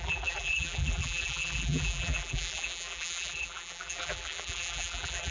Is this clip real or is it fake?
fake